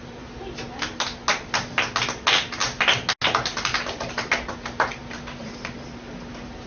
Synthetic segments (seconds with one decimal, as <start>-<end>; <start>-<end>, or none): none